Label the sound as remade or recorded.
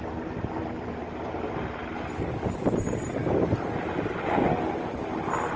recorded